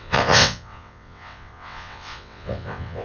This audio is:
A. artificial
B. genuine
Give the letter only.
A